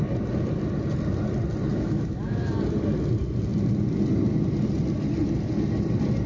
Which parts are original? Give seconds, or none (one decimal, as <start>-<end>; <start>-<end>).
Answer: 0.0-1.7; 2.5-6.3